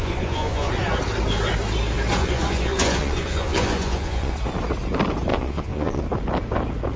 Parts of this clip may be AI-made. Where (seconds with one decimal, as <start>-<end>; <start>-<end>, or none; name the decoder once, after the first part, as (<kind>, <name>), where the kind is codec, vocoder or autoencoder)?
0.0-0.7 (vocoder, Vocos); 2.2-4.3; 5.3-6.0